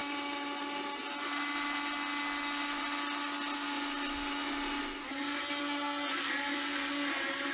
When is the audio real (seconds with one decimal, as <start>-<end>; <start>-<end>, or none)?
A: 0.0-7.5